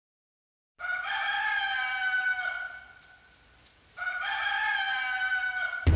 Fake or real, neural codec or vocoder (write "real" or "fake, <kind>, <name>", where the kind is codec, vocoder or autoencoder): real